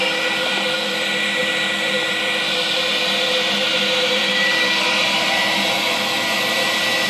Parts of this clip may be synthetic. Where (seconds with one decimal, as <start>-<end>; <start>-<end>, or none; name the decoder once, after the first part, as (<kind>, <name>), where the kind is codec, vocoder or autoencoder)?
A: 3.7-5.7 (vocoder, BigVGAN v2)